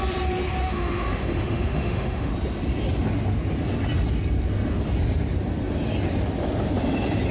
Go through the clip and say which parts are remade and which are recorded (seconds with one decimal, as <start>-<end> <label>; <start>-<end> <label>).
0.0-0.6 recorded; 0.6-2.3 remade; 2.3-7.3 recorded